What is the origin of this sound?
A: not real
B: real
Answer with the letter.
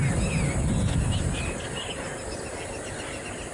B